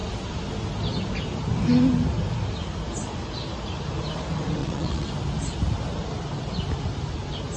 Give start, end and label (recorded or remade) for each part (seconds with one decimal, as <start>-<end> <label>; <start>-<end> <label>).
0.0-4.6 recorded; 4.6-5.1 remade; 5.1-7.6 recorded

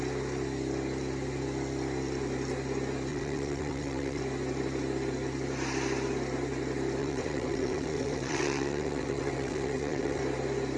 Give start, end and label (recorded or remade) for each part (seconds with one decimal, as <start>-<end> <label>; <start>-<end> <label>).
0.0-3.1 recorded; 3.1-4.2 remade; 4.2-7.0 recorded; 7.0-10.2 remade; 10.2-10.8 recorded

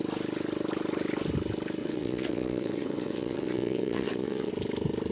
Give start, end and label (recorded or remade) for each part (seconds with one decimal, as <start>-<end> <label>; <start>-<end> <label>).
0.0-1.8 recorded; 1.8-4.5 remade; 4.5-5.1 recorded

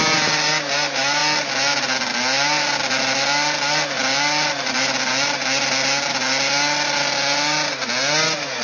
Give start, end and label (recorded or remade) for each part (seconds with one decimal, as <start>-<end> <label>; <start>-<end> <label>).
0.0-8.6 recorded

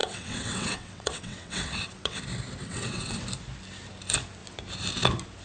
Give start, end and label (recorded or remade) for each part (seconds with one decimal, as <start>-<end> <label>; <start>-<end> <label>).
0.0-2.2 remade; 2.2-2.6 recorded; 2.6-3.2 remade; 3.2-5.4 recorded

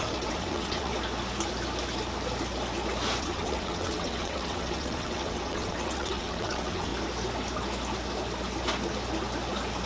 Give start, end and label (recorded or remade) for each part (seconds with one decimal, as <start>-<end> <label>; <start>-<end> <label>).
0.0-0.9 remade; 0.9-3.2 recorded; 3.2-6.9 remade; 6.9-9.9 recorded

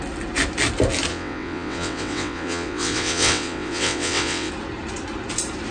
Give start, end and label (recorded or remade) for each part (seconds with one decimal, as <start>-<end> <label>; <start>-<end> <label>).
0.0-1.1 recorded; 1.1-4.5 remade; 4.5-5.7 recorded

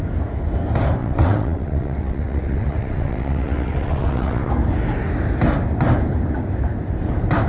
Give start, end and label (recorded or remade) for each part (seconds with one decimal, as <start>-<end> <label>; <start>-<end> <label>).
0.0-1.0 recorded; 1.0-4.5 remade; 4.5-7.5 recorded